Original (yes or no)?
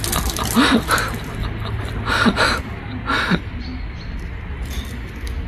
yes